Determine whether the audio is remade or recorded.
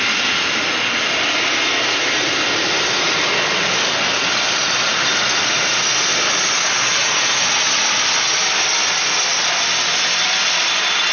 recorded